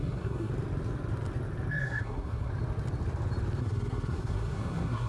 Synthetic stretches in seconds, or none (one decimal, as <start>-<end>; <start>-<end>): 0.0-0.5; 1.7-2.5; 3.6-5.1